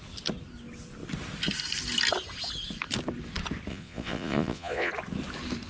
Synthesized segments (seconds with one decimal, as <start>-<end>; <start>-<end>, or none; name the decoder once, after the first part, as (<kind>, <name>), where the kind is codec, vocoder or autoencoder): 3.7-4.9 (vocoder, Vocos)

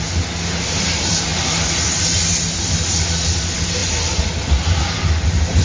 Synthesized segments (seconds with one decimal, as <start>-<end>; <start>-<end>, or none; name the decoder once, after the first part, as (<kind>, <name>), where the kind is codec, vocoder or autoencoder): none